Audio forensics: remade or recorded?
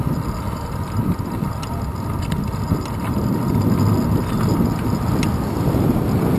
recorded